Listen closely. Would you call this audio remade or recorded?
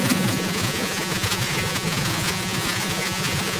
remade